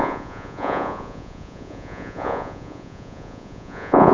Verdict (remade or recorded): remade